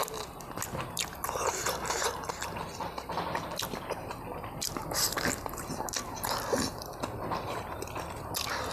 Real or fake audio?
real